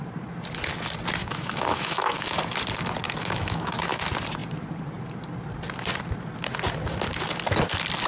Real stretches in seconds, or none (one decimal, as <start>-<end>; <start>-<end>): 0.0-1.2; 2.4-3.2; 4.0-8.1